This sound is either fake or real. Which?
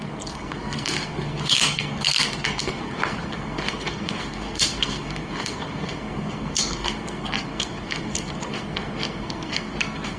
fake